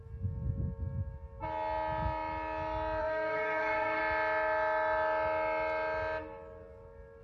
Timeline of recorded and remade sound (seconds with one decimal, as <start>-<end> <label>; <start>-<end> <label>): 0.0-3.0 recorded; 3.0-4.0 remade; 4.0-7.2 recorded